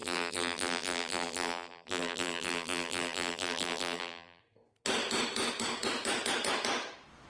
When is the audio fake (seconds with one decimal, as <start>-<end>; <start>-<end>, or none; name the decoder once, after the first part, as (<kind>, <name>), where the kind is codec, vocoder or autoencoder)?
0.0-4.4 (vocoder, BigVGAN v2)